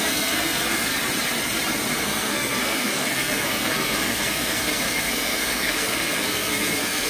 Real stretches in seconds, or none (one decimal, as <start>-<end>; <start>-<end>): 0.9-2.0